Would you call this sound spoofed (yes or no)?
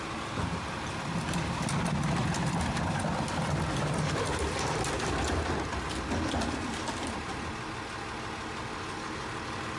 no